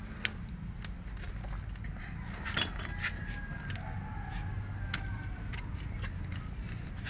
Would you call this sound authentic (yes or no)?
yes